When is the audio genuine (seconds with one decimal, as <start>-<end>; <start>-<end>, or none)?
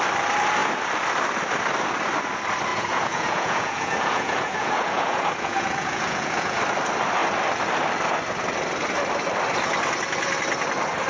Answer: 0.0-2.7; 6.6-11.1